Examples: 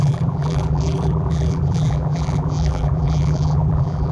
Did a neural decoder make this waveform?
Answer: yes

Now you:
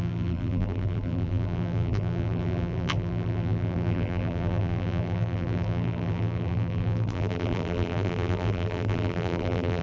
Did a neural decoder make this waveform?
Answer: yes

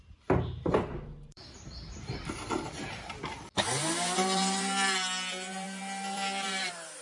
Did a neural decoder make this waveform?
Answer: yes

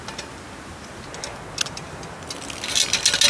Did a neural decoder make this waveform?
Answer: no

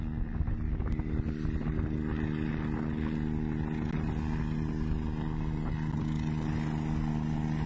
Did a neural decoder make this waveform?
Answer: no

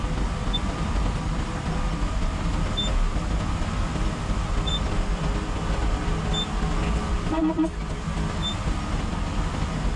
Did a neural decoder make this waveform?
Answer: no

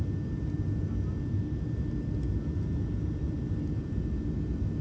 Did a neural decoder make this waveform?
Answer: no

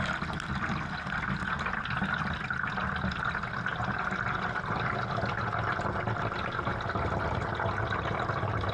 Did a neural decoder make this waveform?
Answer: no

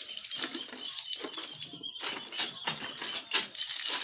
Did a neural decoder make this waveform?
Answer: no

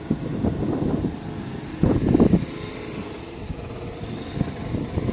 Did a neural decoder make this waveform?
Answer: no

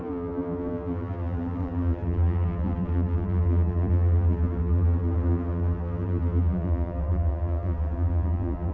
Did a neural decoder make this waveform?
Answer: yes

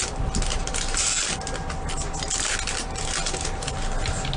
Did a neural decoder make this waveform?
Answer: no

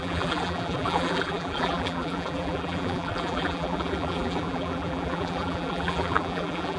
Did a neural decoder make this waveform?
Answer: yes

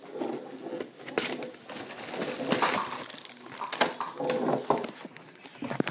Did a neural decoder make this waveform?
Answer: no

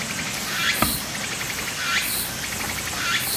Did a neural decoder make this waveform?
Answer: no